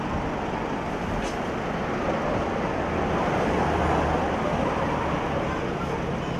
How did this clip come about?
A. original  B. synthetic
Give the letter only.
A